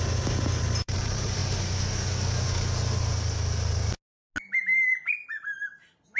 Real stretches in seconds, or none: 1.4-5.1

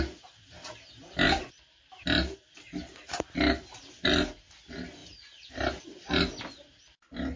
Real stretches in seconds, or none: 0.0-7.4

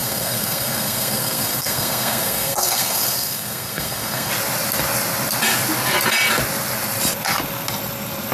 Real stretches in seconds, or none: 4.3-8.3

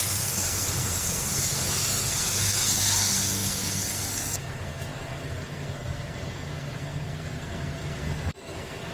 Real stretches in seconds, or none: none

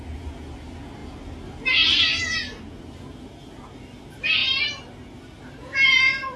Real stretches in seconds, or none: 0.0-6.4